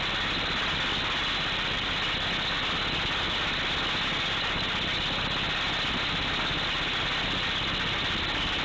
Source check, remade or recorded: recorded